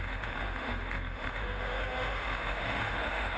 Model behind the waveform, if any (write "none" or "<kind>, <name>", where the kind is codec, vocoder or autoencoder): autoencoder, DAC-VAE